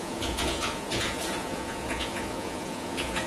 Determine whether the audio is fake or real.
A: fake